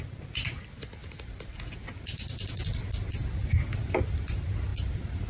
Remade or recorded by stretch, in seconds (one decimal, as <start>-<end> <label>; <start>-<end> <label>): 0.0-5.3 recorded